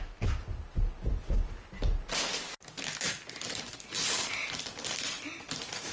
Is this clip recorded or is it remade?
recorded